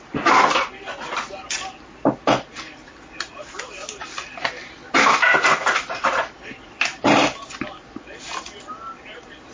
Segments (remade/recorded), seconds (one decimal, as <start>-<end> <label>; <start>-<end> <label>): 0.0-9.5 recorded